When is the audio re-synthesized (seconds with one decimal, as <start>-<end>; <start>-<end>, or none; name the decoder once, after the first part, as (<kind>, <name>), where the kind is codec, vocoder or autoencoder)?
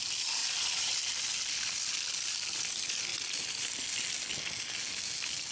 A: 0.4-1.0 (vocoder, BigVGAN v2); 3.1-4.2